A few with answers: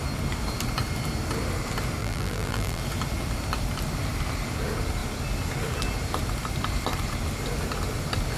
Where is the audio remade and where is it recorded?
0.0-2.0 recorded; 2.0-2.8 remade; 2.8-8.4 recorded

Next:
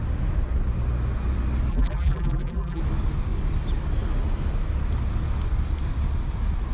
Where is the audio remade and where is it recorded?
0.0-1.7 recorded; 1.7-2.8 remade; 2.8-6.7 recorded